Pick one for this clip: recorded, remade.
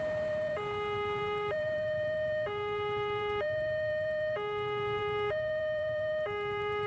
remade